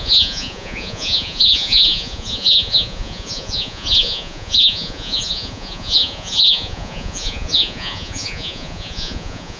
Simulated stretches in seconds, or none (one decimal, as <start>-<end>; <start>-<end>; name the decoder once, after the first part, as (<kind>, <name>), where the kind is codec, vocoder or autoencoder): 0.0-9.6 (vocoder, Vocos)